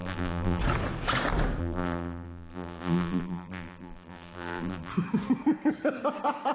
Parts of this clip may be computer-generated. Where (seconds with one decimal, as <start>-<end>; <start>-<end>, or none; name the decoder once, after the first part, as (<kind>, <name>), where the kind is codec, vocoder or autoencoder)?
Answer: 0.0-0.6 (vocoder, BigVGAN v2); 1.6-4.9